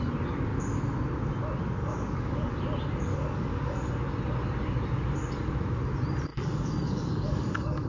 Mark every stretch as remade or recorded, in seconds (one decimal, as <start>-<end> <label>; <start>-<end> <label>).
0.0-1.8 recorded; 1.8-2.5 remade; 2.5-3.1 recorded; 3.1-3.9 remade; 3.9-6.3 recorded; 6.3-7.9 remade